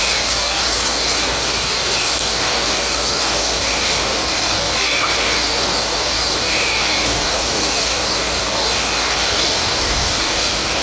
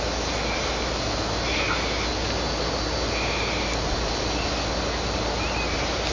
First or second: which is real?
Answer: second